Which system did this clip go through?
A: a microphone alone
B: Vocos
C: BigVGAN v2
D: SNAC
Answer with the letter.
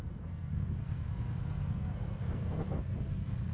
D